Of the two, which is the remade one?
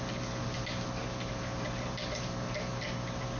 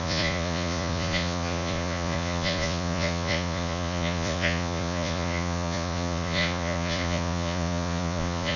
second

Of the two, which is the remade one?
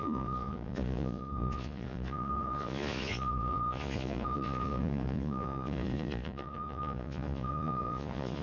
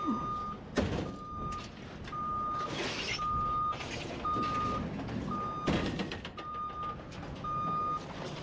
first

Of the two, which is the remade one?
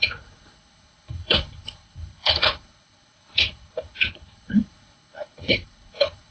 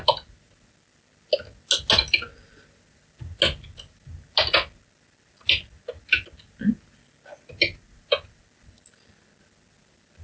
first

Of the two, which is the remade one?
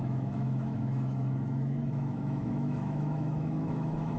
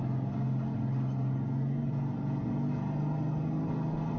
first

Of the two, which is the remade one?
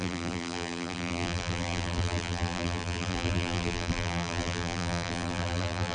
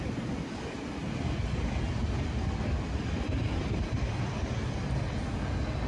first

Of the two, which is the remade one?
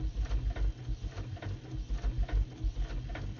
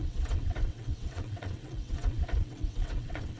second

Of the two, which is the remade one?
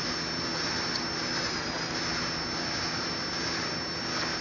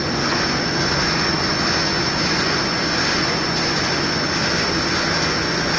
second